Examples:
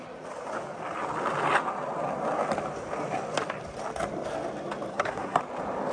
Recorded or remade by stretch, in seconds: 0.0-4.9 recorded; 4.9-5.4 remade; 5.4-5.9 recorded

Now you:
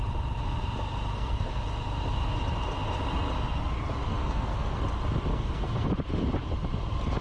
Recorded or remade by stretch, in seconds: 0.0-1.1 recorded; 1.1-1.6 remade; 1.6-4.1 recorded; 4.1-4.8 remade; 4.8-5.3 recorded; 5.3-5.9 remade; 5.9-7.2 recorded

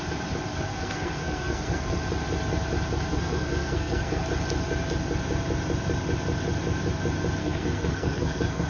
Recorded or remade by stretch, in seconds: 0.0-0.5 recorded; 0.5-2.0 remade; 2.0-3.1 recorded; 3.1-4.2 remade; 4.2-7.4 recorded; 7.4-8.7 remade